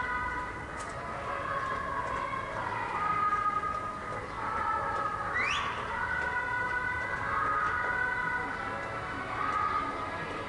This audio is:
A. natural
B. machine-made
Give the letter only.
A